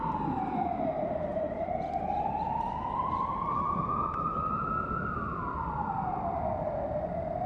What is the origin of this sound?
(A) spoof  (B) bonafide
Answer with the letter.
A